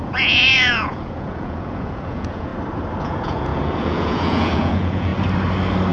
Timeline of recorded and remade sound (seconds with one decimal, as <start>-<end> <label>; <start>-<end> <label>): 0.0-2.5 remade; 2.5-3.0 recorded; 3.0-5.1 remade; 5.1-5.9 recorded